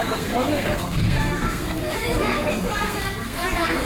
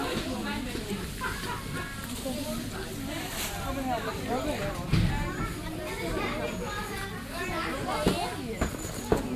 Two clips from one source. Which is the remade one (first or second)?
first